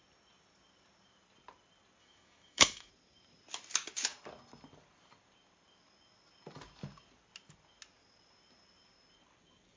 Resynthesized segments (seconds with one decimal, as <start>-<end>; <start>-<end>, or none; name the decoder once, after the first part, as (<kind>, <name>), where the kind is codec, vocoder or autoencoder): 2.0-2.9 (autoencoder, DAC-VAE)

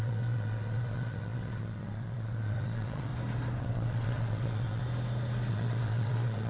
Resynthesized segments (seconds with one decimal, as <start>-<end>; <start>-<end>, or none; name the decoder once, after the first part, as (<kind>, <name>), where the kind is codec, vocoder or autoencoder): 0.0-3.1 (vocoder, WaveNeXt); 3.6-4.8; 5.5-6.5

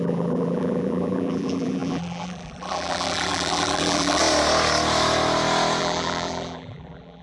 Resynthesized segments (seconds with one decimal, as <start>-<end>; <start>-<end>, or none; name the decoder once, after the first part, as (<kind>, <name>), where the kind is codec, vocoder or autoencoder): 0.0-4.2 (vocoder, BigVGAN v2); 5.8-7.2

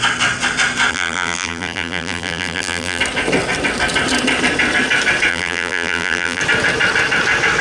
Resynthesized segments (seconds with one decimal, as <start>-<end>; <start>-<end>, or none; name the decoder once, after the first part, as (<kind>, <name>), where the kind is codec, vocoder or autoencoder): 0.9-3.0 (vocoder, BigVGAN v2); 5.3-6.4

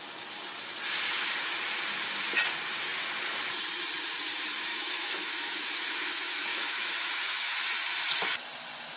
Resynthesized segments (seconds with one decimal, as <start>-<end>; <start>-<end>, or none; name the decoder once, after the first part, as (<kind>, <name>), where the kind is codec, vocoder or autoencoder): 4.7-7.6 (autoencoder, DAC-VAE)

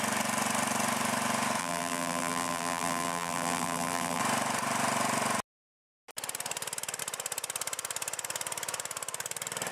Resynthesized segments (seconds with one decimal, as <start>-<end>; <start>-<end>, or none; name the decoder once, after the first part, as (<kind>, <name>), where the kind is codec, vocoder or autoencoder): 1.6-4.2 (vocoder, BigVGAN v2)

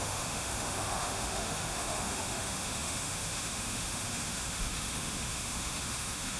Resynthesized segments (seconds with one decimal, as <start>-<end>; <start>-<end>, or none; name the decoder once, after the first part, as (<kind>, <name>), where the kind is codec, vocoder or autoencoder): 0.0-6.4 (autoencoder, DAC-VAE)

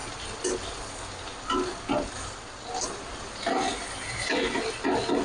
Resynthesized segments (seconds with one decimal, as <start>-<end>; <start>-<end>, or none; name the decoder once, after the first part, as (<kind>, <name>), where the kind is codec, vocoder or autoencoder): none